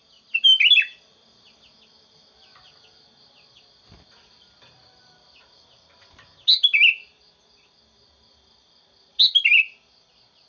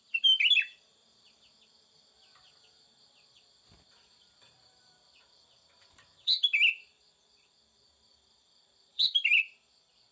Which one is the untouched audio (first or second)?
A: first